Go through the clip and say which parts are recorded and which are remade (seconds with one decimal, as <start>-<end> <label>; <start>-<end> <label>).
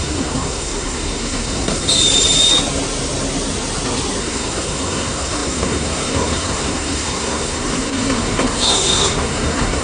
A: 0.0-1.9 remade; 1.9-4.2 recorded; 4.2-9.8 remade